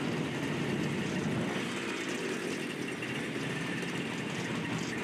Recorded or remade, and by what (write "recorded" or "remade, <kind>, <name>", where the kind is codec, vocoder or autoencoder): recorded